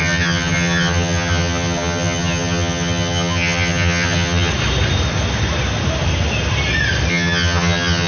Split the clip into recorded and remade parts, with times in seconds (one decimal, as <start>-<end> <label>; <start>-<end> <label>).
0.0-4.5 remade; 4.5-7.1 recorded; 7.1-8.1 remade